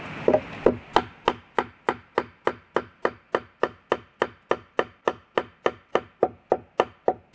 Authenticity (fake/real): real